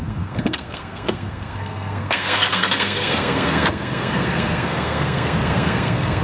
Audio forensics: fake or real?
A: fake